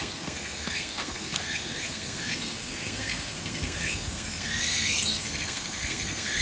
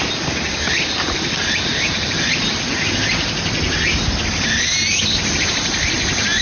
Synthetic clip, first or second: first